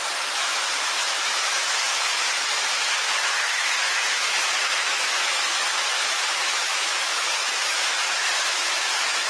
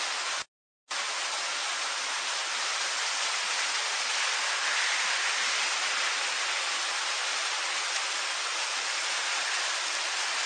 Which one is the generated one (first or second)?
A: first